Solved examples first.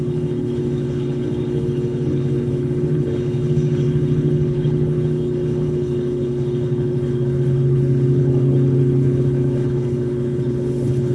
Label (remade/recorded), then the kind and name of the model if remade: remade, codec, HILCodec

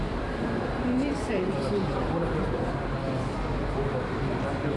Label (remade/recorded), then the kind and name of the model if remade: recorded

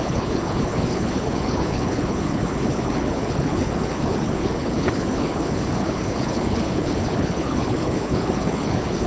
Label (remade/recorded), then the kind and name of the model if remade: remade, codec, HILCodec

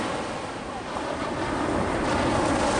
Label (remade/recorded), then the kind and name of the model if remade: recorded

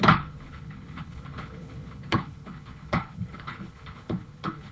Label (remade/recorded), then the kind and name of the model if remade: remade, codec, HILCodec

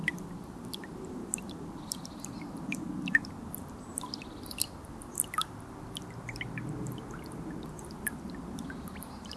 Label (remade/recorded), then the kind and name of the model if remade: recorded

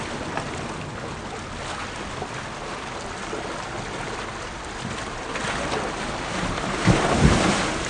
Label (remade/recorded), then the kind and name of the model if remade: recorded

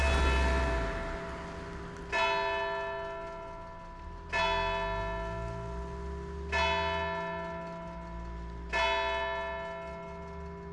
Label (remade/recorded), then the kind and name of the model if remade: recorded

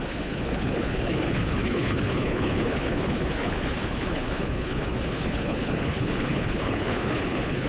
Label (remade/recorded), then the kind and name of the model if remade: remade, codec, HILCodec